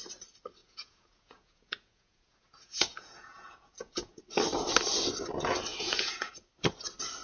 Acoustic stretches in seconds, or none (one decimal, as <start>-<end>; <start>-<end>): 0.0-0.6; 4.2-5.7; 6.3-7.2